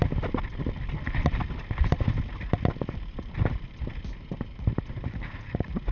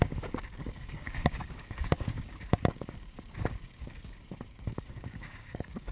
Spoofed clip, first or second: second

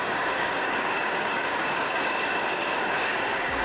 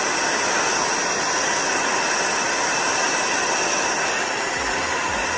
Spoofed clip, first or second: first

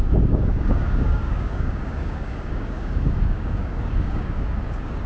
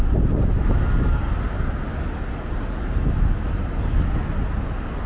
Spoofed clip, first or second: first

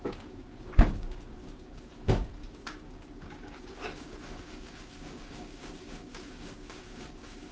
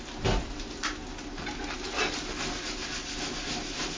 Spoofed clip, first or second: first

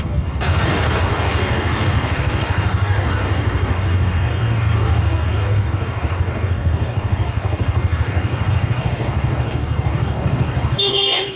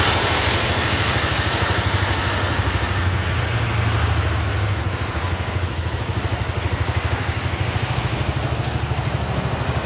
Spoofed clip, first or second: first